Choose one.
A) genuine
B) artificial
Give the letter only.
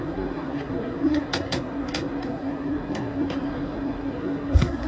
B